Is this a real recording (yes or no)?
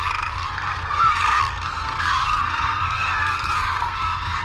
no